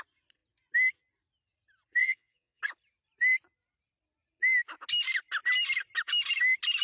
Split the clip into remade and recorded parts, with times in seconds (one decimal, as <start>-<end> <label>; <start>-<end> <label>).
0.0-2.0 recorded; 2.0-2.6 remade; 2.6-6.8 recorded